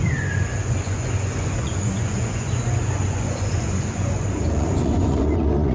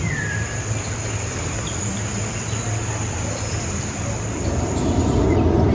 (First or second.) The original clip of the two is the second